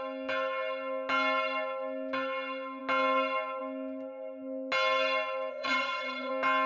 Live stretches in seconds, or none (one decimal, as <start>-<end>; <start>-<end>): 0.0-5.5; 6.3-6.7